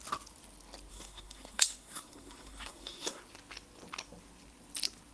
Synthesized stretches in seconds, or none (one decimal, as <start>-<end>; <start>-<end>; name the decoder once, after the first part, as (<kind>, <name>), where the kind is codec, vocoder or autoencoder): 0.9-3.2 (codec, SNAC)